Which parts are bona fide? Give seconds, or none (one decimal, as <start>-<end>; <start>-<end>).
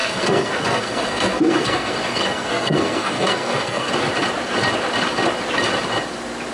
3.9-6.5